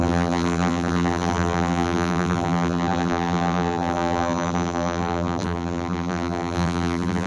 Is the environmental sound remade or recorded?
remade